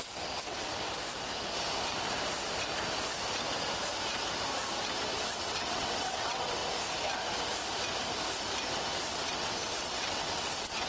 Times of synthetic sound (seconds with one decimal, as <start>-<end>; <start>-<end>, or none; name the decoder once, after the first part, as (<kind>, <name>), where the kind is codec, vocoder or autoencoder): 0.0-0.7 (vocoder, WaveNeXt); 5.1-6.6; 8.9-10.9